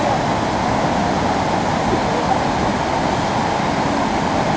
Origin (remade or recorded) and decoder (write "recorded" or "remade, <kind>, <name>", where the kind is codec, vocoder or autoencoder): recorded